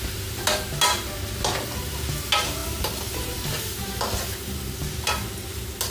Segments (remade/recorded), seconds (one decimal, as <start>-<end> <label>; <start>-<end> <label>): 0.0-5.9 recorded